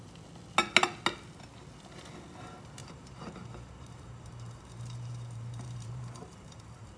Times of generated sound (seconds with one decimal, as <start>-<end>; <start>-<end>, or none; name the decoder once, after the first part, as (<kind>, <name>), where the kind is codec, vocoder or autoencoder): 2.8-7.0 (vocoder, BigVGAN v2)